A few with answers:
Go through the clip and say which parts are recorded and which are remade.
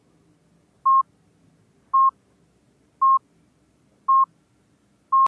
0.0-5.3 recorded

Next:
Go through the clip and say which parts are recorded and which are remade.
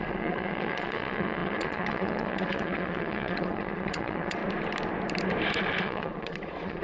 0.0-4.4 remade; 4.4-5.8 recorded; 5.8-6.8 remade